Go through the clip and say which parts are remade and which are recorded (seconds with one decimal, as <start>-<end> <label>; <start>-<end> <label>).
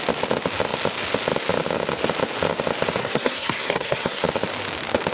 0.0-3.0 recorded; 3.0-4.2 remade; 4.2-5.1 recorded